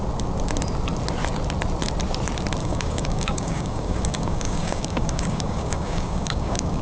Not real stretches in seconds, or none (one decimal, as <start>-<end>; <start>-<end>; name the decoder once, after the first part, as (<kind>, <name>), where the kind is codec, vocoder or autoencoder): 2.6-6.8 (codec, DAC)